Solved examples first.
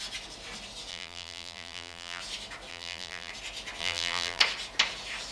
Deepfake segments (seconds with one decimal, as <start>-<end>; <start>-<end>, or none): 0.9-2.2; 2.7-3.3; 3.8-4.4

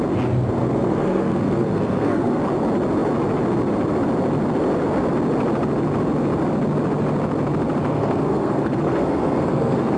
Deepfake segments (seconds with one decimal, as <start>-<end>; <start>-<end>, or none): 0.6-2.4; 7.9-10.0

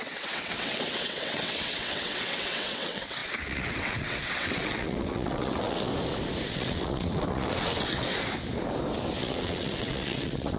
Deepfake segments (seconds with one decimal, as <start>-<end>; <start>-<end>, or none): 0.0-5.9; 6.5-8.1; 9.2-10.6

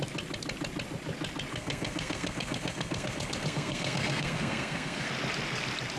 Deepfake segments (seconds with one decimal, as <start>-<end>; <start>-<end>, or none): 1.5-5.1